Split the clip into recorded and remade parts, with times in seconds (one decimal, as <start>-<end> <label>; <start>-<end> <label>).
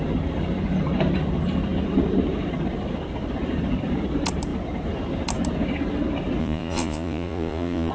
0.0-6.4 recorded; 6.4-7.9 remade